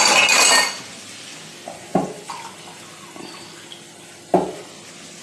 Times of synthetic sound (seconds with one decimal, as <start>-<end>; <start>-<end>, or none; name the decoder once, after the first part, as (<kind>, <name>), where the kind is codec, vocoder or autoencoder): none

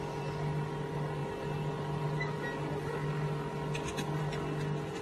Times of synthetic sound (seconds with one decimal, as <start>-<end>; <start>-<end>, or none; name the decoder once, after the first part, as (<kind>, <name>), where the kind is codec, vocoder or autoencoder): none

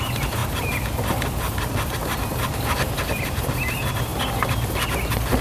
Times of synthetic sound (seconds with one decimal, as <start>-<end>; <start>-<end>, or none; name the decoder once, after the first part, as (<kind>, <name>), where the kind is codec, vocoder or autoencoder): none

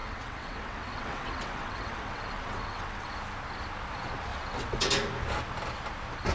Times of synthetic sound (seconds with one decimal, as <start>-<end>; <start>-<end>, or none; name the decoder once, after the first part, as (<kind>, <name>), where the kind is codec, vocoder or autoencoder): 0.0-3.1 (vocoder, WaveNeXt); 4.3-4.9

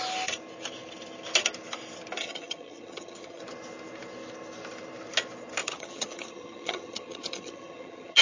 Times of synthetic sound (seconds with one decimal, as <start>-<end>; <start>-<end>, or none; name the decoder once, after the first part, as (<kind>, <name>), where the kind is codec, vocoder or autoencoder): 2.2-3.4 (vocoder, HiFi-GAN); 5.6-8.2